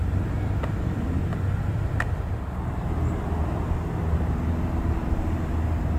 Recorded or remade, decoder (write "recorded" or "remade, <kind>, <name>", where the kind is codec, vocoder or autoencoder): recorded